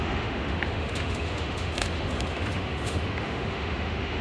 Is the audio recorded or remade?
remade